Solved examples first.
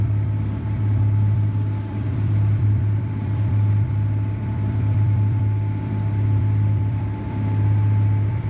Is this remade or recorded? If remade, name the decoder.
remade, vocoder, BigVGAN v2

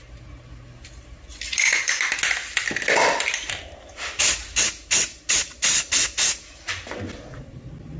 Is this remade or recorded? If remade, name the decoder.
recorded